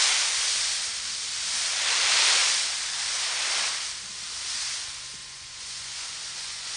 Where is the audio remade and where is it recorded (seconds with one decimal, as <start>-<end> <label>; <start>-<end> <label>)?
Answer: 0.0-5.2 recorded; 5.2-6.8 remade